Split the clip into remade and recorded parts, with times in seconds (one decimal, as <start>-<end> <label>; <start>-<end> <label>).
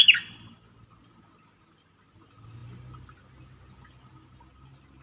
0.0-5.0 recorded